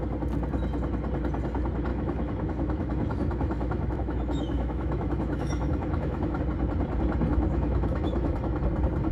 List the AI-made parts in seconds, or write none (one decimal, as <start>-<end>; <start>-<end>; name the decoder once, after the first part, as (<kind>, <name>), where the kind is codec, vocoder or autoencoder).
1.9-6.4 (autoencoder, DAC-VAE); 7.3-8.6